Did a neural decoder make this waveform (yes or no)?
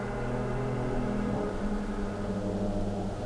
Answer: no